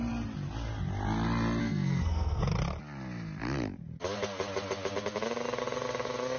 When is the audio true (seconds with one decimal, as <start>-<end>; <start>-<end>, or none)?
0.0-1.6; 2.4-6.4